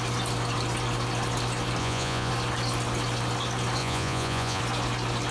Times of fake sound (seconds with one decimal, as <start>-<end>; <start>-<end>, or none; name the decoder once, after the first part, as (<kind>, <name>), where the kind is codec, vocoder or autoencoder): 1.8-2.3 (vocoder, Vocos); 3.8-4.6